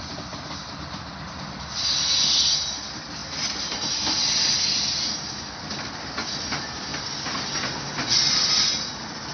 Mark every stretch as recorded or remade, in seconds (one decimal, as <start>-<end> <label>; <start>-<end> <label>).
0.0-3.2 recorded; 3.2-4.2 remade; 4.2-9.3 recorded